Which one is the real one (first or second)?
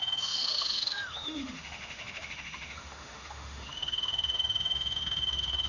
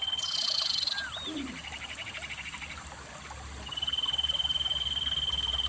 second